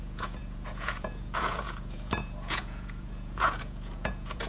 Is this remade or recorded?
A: remade